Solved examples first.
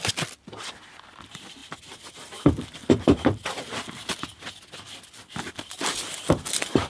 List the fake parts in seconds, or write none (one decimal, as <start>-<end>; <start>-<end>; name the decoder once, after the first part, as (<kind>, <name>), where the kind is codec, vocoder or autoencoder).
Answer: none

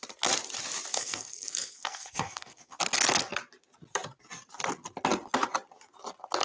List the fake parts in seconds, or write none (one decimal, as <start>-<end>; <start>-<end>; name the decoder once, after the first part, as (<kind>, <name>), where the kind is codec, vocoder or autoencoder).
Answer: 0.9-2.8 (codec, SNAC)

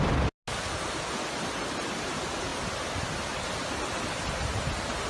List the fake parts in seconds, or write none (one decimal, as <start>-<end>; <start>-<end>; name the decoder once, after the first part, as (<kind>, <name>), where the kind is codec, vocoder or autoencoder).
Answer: none

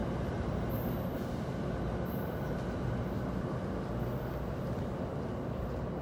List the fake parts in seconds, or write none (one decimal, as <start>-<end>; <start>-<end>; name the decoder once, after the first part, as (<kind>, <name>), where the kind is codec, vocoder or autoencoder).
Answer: none

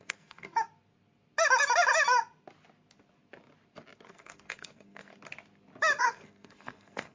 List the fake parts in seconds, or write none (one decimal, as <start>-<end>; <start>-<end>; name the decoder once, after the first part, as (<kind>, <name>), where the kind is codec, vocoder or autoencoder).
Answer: 0.0-0.5 (codec, SNAC); 4.1-5.1; 6.0-7.1